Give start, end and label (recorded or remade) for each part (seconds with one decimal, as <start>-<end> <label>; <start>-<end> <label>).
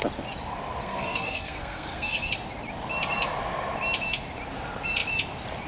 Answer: 0.0-0.8 recorded; 0.8-2.3 remade; 2.3-5.7 recorded